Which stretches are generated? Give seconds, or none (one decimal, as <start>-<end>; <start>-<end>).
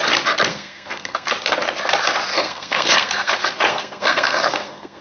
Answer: 0.5-1.3; 2.3-3.3; 3.7-5.0